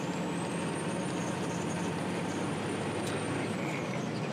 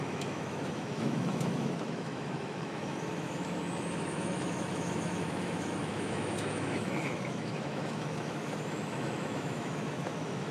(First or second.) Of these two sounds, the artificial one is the second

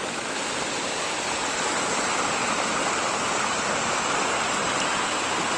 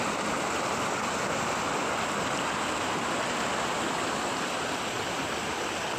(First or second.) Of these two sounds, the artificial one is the first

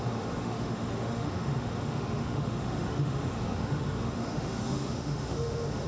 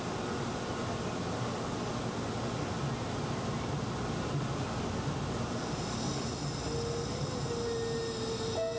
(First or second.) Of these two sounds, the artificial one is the first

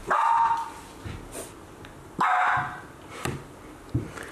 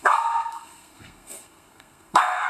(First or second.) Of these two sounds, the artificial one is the second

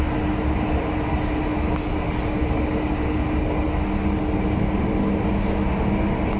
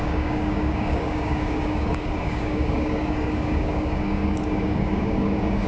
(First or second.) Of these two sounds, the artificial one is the second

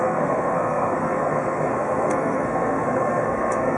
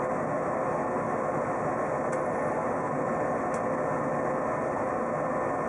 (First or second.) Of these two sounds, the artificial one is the first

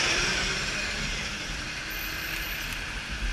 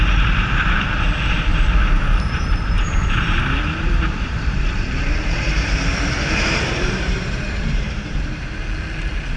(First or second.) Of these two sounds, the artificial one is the second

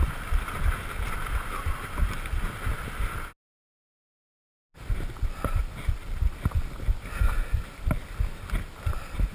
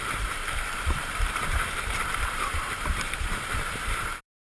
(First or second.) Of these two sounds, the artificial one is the second